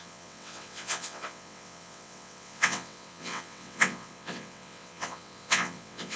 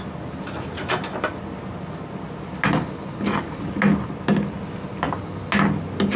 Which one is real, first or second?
second